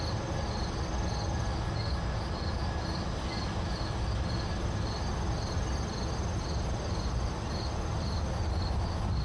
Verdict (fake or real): real